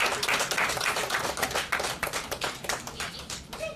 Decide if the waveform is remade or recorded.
remade